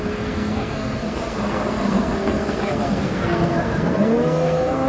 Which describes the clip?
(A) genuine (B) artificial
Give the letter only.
B